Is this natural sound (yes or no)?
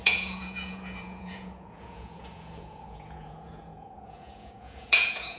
no